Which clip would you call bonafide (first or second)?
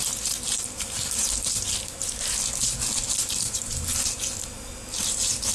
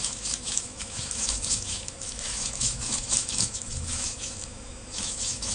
first